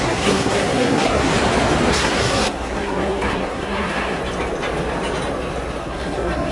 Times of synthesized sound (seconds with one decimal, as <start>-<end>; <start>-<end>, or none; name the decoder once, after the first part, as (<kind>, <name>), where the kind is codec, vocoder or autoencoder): 0.0-1.3 (codec, SNAC); 1.9-4.2; 5.8-6.5